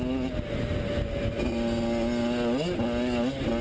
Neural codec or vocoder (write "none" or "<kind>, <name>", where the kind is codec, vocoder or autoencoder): none